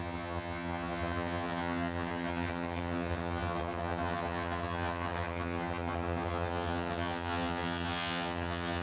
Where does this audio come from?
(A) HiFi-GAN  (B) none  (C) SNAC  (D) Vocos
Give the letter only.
A